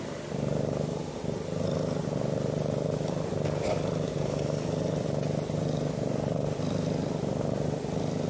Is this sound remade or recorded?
recorded